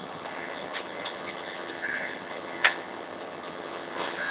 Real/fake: fake